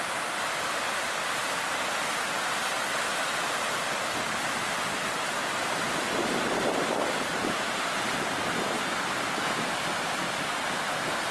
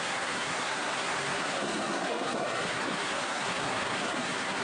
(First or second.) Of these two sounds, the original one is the first